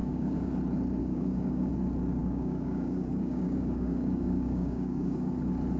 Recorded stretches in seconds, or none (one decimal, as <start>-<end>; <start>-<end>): 0.5-1.0; 1.7-2.2; 5.3-5.8